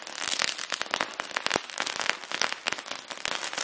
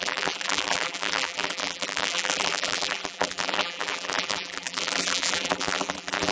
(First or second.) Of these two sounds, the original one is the first